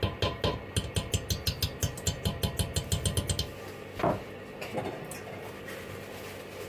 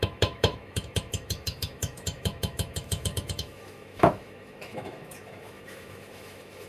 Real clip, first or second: first